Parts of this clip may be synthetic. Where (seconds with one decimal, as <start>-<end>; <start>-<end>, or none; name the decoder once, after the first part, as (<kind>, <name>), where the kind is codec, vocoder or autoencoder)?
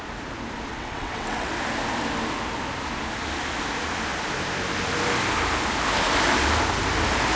0.7-1.5 (vocoder, WaveNeXt)